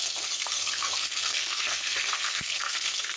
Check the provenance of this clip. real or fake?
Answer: fake